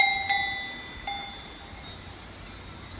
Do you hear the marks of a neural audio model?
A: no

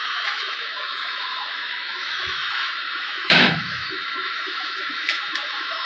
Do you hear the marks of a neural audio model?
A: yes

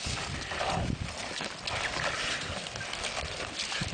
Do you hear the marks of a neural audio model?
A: no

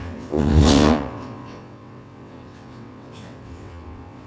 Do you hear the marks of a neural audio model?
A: yes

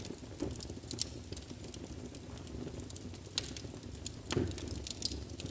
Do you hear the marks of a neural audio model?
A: no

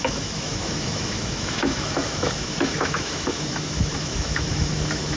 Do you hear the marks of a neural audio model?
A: yes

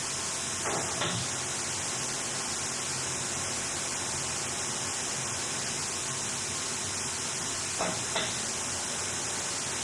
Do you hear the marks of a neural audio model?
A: no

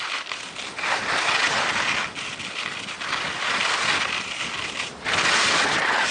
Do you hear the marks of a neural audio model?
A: no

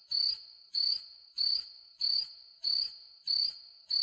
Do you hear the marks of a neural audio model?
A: yes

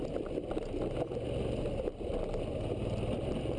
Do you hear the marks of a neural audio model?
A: no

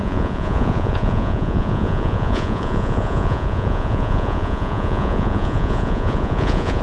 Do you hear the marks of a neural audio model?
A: yes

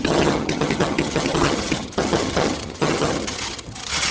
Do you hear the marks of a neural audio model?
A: yes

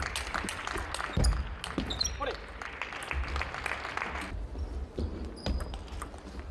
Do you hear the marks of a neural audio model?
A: no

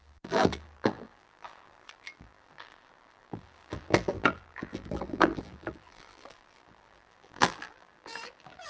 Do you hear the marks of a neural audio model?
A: yes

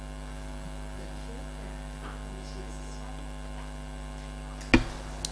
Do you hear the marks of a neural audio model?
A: no